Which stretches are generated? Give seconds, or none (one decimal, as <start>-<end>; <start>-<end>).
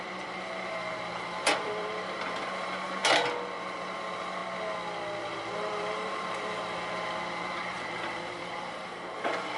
0.0-3.0; 3.6-4.4; 5.2-9.6